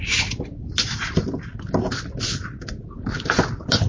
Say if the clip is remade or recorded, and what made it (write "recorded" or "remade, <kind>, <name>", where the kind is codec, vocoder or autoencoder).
recorded